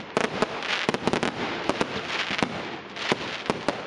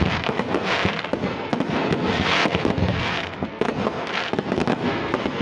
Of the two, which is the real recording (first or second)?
first